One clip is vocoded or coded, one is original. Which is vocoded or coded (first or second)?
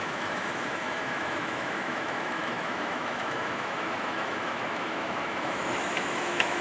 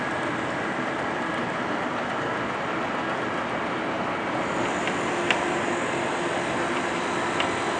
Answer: first